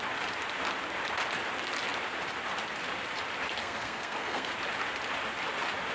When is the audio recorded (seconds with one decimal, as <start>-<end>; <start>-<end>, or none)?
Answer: 0.0-3.6; 4.5-5.9